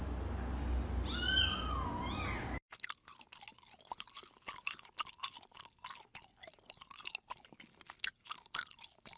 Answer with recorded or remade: recorded